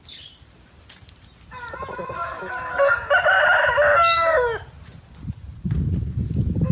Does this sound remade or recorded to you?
recorded